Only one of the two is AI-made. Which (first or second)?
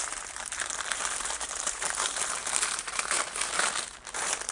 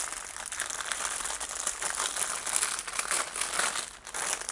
first